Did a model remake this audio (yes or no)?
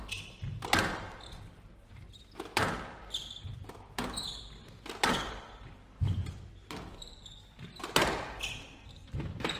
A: no